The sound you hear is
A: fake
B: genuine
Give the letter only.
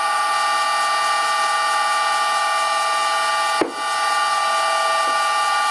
B